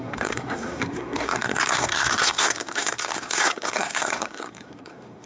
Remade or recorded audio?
remade